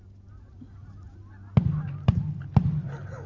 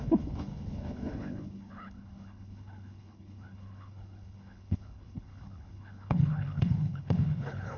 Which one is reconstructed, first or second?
second